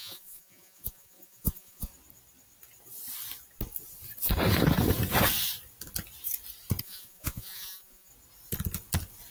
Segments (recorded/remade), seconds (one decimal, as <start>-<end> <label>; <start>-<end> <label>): 0.0-1.9 remade; 1.9-6.8 recorded; 6.8-8.1 remade; 8.1-9.3 recorded